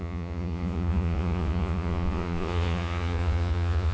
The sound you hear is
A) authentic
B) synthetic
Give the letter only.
B